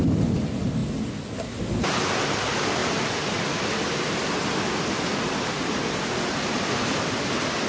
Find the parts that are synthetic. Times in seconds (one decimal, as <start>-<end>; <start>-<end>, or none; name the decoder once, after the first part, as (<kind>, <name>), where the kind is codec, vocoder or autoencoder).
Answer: none